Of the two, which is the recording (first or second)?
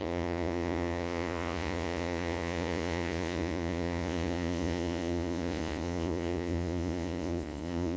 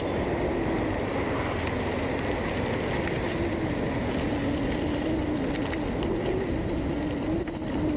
second